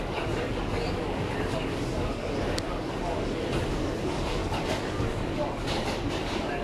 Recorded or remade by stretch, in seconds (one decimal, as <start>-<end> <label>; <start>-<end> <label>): 0.0-6.6 remade